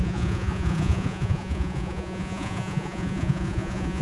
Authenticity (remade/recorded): remade